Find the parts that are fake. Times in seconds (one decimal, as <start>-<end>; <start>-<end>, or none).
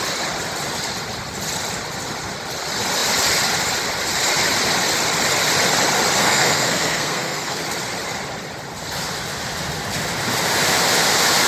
6.2-7.6